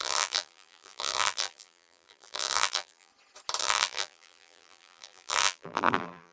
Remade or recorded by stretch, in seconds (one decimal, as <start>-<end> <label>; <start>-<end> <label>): 0.0-3.1 remade; 3.1-3.6 recorded; 3.6-6.3 remade